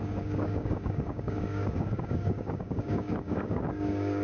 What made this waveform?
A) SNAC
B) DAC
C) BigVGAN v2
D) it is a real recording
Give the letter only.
B